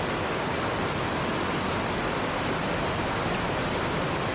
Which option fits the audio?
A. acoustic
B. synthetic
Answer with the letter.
A